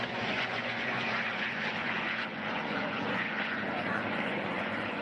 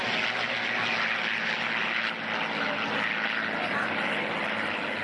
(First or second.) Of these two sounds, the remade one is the first